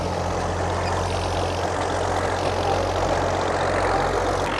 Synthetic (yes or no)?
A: no